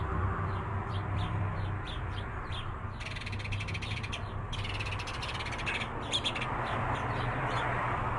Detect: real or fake fake